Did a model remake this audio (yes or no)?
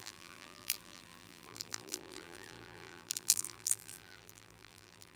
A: yes